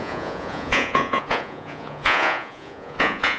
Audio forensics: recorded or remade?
remade